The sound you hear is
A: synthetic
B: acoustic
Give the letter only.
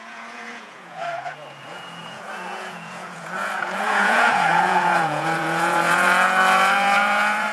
A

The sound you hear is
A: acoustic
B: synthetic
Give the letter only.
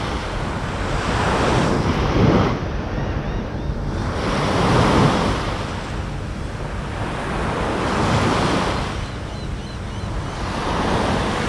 A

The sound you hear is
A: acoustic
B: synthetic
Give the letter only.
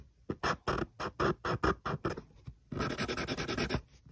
A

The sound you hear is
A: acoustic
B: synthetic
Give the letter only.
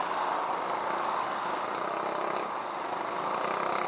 A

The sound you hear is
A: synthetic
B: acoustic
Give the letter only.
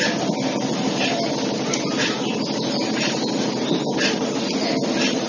B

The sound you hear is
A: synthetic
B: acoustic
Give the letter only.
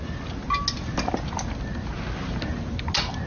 B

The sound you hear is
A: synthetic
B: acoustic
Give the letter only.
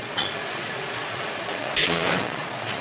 A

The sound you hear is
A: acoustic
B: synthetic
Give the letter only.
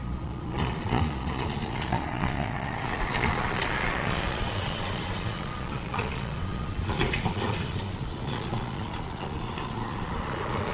B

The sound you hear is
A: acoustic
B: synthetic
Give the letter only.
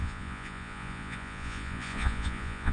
B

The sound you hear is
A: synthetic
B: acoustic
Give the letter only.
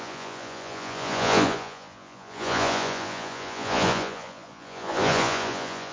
A